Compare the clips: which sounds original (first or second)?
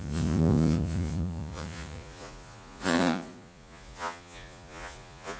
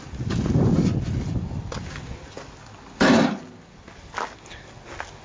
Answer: second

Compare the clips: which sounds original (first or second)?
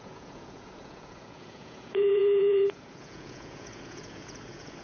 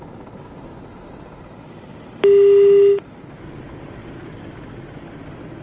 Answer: second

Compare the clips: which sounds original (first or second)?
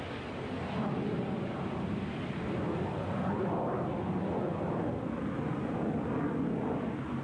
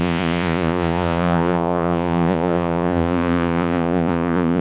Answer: first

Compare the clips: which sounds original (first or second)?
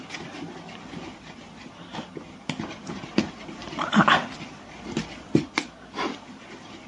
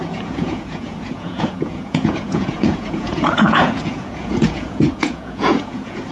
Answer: first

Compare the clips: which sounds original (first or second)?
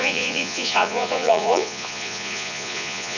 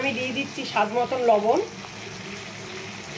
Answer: second